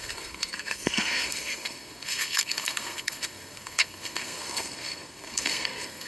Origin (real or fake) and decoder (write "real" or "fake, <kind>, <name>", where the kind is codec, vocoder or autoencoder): fake, codec, SNAC